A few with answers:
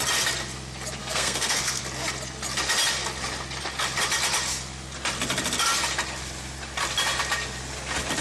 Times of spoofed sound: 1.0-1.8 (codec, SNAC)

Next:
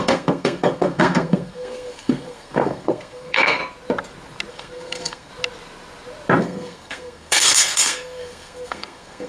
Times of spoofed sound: 0.0-3.6 (codec, SNAC); 4.5-5.3; 6.4-9.3

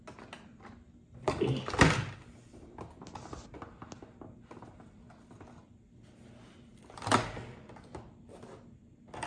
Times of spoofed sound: none